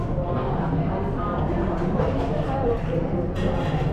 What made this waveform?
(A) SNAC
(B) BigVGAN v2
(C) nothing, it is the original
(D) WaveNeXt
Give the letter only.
C